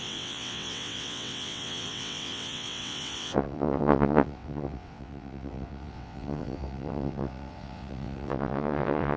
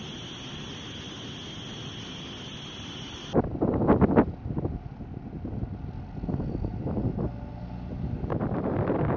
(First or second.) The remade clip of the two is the first